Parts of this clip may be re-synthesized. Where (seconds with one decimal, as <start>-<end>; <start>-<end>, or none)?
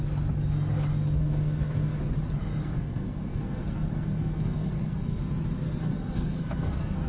1.2-2.0; 2.6-5.2; 5.8-7.1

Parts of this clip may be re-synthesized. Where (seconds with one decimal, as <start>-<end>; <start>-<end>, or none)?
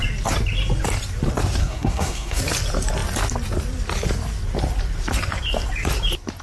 1.6-2.4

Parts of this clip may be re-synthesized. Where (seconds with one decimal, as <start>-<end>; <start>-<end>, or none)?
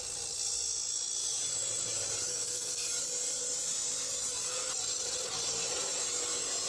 2.3-2.9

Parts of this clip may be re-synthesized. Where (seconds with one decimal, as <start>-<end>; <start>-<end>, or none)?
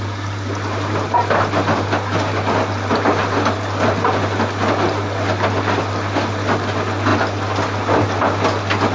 none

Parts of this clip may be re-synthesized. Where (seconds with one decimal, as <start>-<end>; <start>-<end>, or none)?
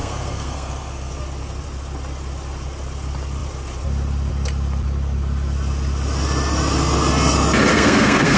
0.0-1.1; 7.7-8.4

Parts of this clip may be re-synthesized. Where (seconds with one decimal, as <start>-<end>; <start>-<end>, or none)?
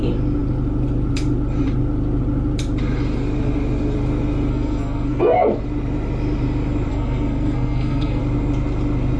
4.5-5.6; 6.9-8.2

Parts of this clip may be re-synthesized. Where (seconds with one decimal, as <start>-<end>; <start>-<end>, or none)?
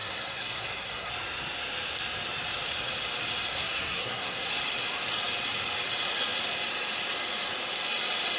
0.0-1.1; 3.5-4.5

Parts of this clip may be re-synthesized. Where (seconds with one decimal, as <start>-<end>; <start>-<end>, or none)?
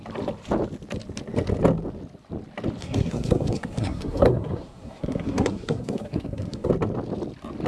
2.8-6.7